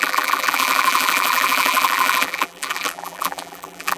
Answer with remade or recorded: remade